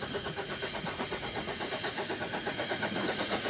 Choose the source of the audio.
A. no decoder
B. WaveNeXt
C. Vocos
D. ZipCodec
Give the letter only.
C